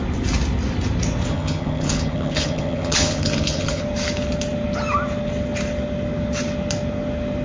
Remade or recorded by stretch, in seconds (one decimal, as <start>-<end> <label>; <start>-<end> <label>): 0.0-1.3 recorded; 1.3-3.8 remade; 3.8-7.4 recorded

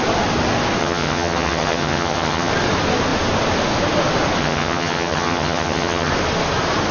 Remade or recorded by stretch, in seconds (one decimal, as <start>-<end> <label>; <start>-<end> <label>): 0.0-0.8 recorded; 0.8-2.5 remade; 2.5-4.4 recorded; 4.4-6.1 remade; 6.1-6.9 recorded

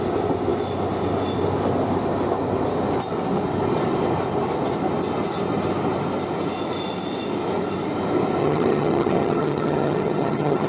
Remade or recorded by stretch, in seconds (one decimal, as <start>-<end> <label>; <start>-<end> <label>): 0.0-8.4 recorded; 8.4-10.7 remade

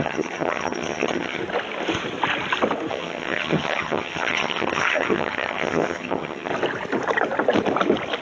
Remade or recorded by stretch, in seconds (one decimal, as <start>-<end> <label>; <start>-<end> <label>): 0.0-1.4 remade; 1.4-2.9 recorded; 2.9-6.5 remade; 6.5-8.2 recorded

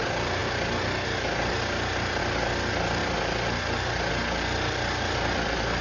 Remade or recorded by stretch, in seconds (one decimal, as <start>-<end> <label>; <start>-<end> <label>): 0.0-5.8 recorded

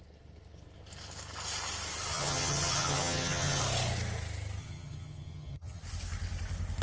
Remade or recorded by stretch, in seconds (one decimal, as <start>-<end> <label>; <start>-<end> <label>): 0.0-2.1 recorded; 2.1-3.6 remade; 3.6-4.6 recorded; 4.6-5.8 remade; 5.8-6.8 recorded

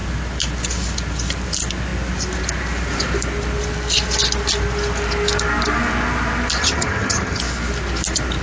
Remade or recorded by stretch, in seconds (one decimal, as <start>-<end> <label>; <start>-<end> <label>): 0.0-6.6 recorded; 6.6-7.4 remade; 7.4-8.4 recorded